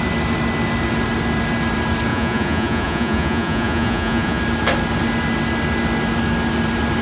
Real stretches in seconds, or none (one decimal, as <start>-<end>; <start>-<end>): 0.0-2.1; 4.4-7.0